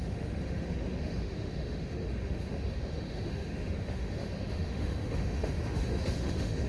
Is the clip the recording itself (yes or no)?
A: no